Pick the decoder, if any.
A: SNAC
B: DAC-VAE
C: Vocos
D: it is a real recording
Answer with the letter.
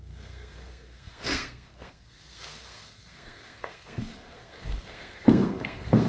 A